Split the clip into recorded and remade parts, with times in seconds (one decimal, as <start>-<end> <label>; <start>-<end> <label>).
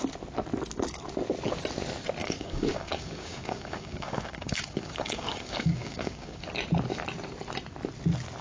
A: 0.0-2.2 recorded; 2.2-6.4 remade; 6.4-8.4 recorded